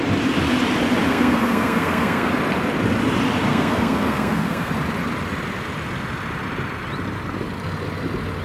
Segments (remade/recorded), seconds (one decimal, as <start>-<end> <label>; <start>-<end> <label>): 0.0-1.1 recorded; 1.1-2.3 remade; 2.3-3.5 recorded; 3.5-4.7 remade; 4.7-8.4 recorded